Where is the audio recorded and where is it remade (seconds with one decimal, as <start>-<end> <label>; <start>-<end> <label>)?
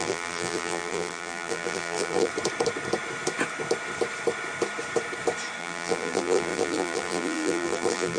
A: 0.0-2.3 remade; 2.3-5.6 recorded; 5.6-8.2 remade